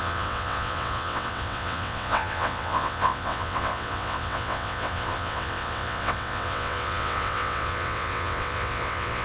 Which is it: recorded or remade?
remade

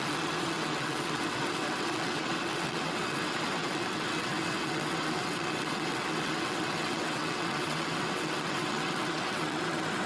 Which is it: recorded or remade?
remade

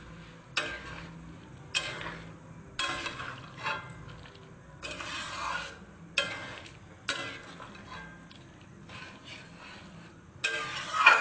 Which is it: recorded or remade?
recorded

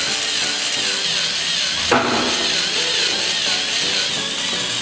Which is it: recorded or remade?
recorded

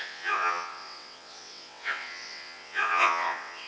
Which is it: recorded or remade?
remade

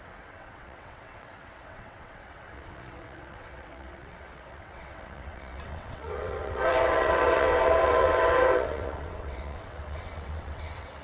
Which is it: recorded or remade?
remade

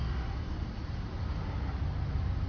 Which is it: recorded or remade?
recorded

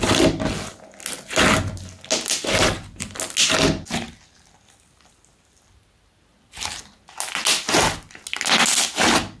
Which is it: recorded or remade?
recorded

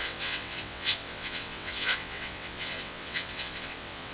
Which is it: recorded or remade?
remade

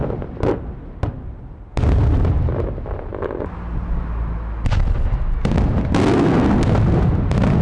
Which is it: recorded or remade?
recorded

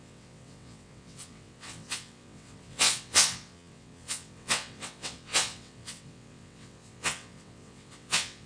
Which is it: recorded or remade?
remade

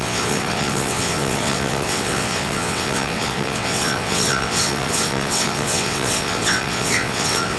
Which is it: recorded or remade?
remade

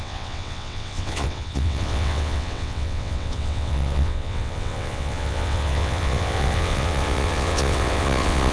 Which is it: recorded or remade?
remade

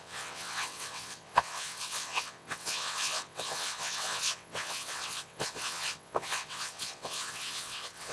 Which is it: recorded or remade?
remade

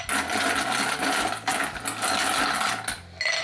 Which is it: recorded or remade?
recorded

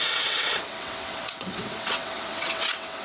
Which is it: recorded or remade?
remade